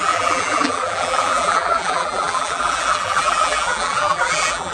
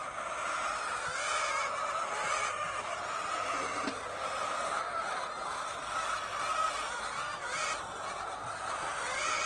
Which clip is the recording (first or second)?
second